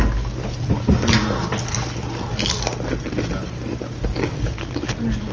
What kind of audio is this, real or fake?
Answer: real